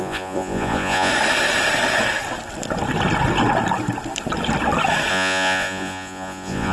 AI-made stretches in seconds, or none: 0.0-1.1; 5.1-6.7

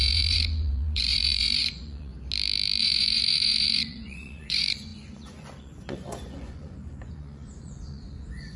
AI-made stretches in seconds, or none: 0.0-2.1; 2.8-8.6

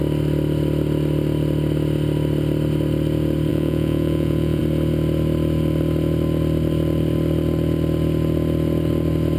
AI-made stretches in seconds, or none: 3.5-4.6

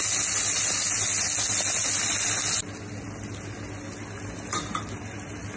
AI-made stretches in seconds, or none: none

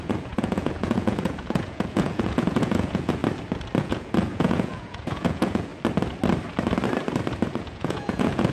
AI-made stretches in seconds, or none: 0.0-3.2; 3.8-5.7; 7.6-8.5

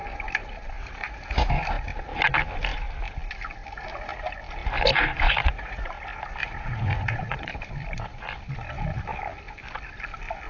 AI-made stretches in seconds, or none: 0.8-1.5; 5.1-5.8; 6.4-7.5

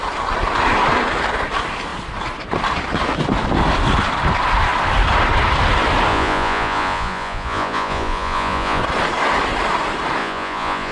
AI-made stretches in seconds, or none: 6.1-8.8; 10.2-10.9

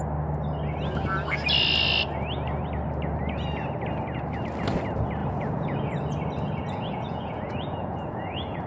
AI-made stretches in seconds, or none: 5.2-5.9; 6.6-8.7